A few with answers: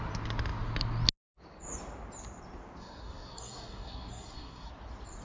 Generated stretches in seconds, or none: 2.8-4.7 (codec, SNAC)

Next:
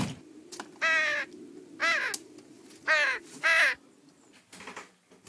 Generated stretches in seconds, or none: none

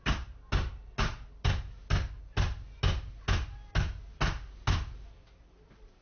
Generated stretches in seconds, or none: none

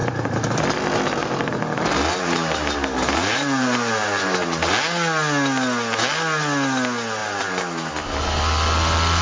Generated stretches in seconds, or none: 0.0-0.6 (vocoder, BigVGAN v2); 1.2-4.7; 7.2-7.9

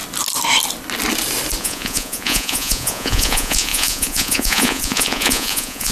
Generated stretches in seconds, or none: 1.6-5.9 (vocoder, Vocos)